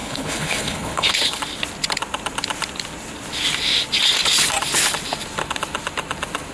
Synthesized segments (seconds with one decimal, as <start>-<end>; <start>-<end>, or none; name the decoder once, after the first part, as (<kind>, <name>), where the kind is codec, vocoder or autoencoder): 0.0-1.4 (codec, HILCodec)